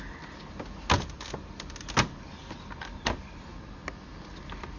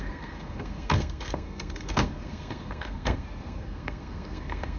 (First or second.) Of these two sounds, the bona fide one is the first